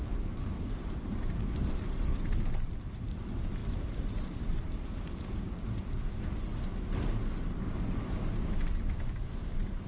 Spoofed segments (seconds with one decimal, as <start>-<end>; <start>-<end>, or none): none